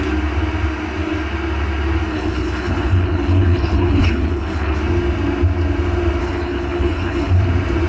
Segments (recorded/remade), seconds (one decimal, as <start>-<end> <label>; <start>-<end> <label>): 0.0-2.1 recorded; 2.1-4.8 remade; 4.8-6.2 recorded; 6.2-7.4 remade; 7.4-7.9 recorded